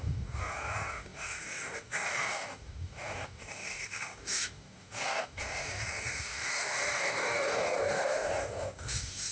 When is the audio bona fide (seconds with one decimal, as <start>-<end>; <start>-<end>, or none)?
none